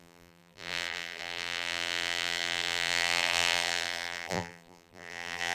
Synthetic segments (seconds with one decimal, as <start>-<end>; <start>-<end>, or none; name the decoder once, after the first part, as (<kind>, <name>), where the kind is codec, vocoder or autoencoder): 0.0-5.5 (vocoder, BigVGAN v2)